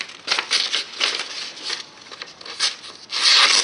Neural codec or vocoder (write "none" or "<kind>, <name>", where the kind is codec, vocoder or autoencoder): none